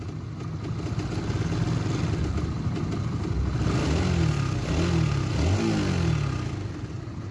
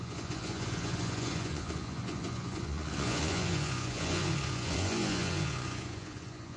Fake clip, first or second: second